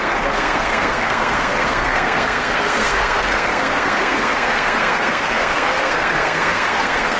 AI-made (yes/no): yes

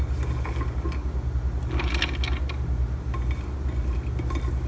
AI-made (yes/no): no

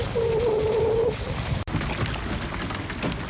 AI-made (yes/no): no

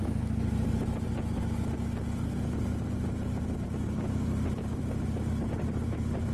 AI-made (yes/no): no